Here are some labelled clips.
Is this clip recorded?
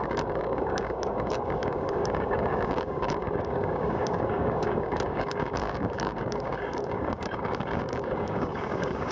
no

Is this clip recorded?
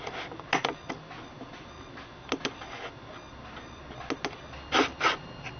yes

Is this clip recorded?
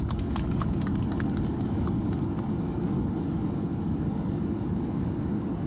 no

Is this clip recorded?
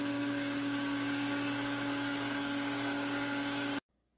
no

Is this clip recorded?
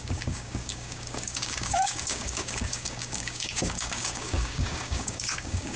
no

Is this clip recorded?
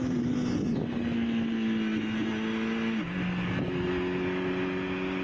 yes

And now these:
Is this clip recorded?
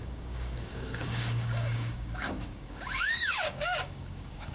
no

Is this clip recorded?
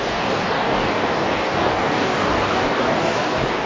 no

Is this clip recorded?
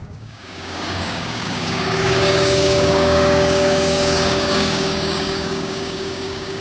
no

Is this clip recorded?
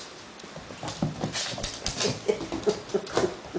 yes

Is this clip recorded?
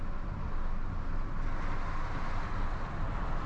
yes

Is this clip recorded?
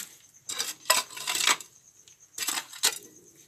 yes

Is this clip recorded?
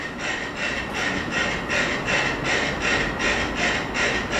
yes